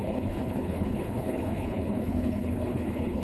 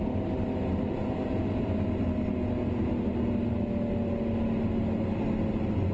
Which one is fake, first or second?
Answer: first